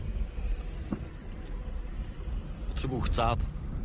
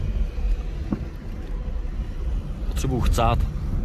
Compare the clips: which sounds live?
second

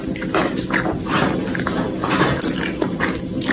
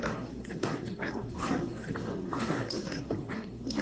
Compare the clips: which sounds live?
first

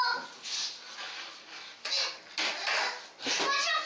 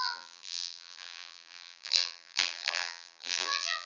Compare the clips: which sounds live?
first